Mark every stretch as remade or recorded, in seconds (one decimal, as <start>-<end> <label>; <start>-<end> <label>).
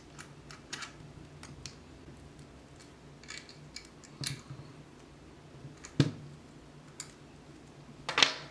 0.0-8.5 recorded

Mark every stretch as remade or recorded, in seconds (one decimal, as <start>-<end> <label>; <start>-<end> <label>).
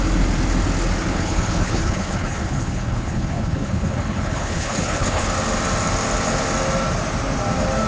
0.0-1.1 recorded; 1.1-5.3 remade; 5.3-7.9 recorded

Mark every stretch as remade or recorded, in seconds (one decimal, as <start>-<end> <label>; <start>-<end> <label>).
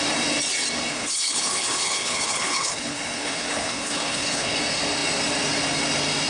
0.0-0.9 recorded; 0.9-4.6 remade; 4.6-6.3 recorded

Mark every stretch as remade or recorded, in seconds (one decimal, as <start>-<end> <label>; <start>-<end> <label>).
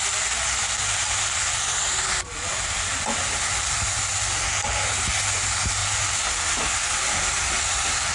0.0-8.1 recorded